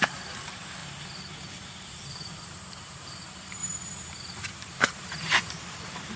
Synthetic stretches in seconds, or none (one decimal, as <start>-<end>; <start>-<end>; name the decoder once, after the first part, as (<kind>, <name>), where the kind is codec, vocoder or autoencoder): 0.0-0.8 (vocoder, BigVGAN v2); 2.3-3.6; 4.5-6.2